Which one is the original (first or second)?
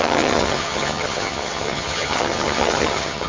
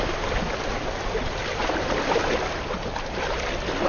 second